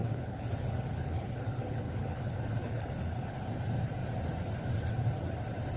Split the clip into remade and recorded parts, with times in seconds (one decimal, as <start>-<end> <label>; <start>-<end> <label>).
0.0-3.5 remade; 3.5-5.8 recorded